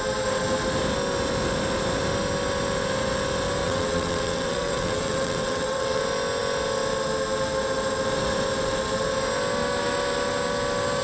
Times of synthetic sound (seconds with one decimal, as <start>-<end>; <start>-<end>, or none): 3.6-6.0